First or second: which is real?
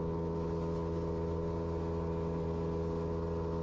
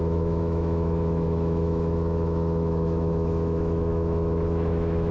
first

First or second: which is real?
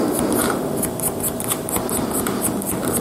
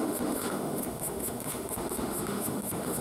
first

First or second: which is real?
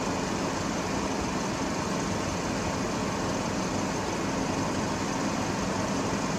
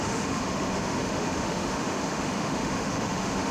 first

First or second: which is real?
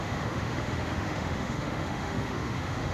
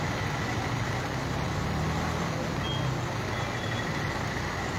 second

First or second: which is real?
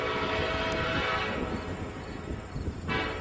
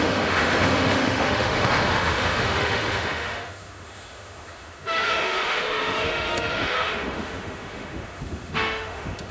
first